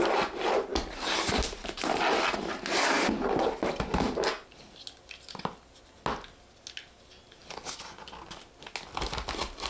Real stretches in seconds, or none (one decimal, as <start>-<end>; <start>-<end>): 0.0-9.7